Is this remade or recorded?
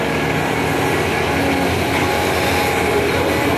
recorded